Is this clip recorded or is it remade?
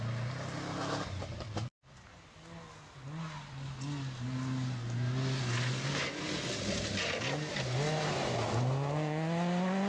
recorded